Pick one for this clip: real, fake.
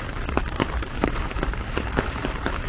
fake